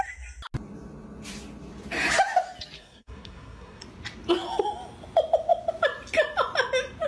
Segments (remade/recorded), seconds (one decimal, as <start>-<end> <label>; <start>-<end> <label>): 0.0-2.8 recorded; 2.8-3.8 remade; 3.8-7.1 recorded